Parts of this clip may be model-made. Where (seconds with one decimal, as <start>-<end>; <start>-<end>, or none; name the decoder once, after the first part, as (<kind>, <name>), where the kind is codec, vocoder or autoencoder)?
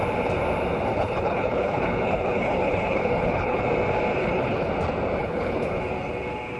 0.9-3.6 (codec, HILCodec); 4.2-4.7; 5.2-5.8